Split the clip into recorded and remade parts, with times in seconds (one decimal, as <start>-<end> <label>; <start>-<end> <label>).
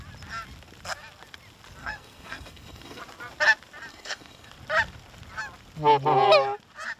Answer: 0.0-1.8 recorded; 1.8-3.0 remade; 3.0-3.9 recorded; 3.9-4.5 remade; 4.5-7.0 recorded